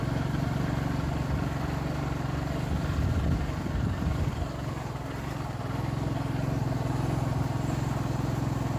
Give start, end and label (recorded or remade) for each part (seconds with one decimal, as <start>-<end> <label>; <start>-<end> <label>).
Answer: 0.0-8.8 recorded